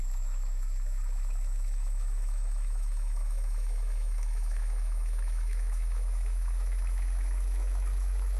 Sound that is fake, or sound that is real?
fake